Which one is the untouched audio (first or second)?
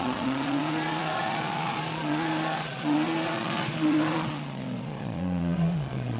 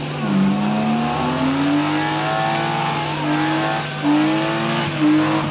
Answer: second